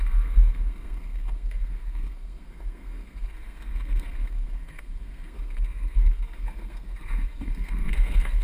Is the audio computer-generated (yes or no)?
yes